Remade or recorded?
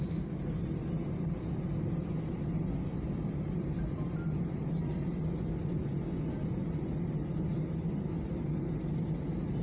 recorded